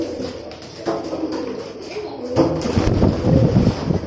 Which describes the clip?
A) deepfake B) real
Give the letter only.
B